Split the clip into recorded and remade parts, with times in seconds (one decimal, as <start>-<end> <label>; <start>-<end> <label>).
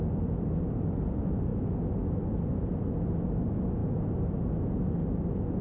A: 0.0-5.6 recorded